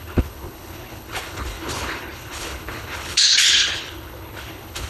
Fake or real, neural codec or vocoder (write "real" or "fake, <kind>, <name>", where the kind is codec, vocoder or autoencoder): fake, codec, HILCodec